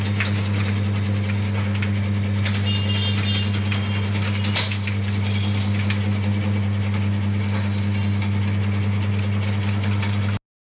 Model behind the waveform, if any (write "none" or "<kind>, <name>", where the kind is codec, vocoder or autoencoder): none